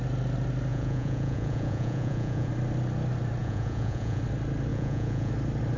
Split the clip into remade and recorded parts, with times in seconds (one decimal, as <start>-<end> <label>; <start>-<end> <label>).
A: 0.0-0.7 recorded; 0.7-2.5 remade; 2.5-3.4 recorded; 3.4-4.2 remade; 4.2-4.7 recorded; 4.7-5.3 remade; 5.3-5.8 recorded